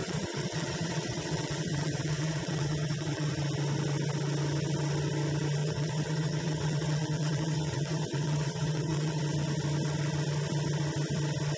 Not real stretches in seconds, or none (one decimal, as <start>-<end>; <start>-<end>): 0.0-3.3; 5.6-9.2